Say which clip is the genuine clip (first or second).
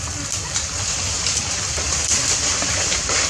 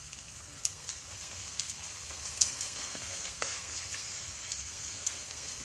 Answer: first